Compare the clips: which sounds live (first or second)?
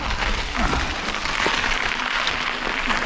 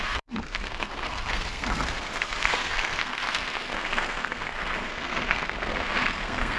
first